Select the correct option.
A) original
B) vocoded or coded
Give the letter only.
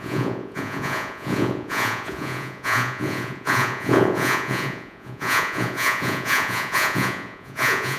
B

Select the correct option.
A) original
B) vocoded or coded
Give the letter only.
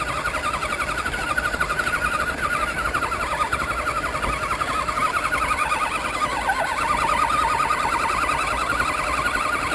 A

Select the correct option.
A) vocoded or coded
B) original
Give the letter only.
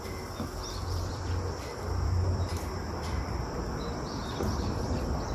A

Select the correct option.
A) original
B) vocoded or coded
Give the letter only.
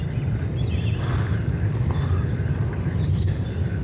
A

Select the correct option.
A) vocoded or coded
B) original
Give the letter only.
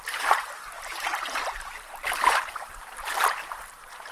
A